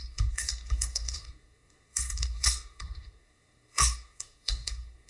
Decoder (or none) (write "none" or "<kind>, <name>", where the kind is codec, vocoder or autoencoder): codec, SNAC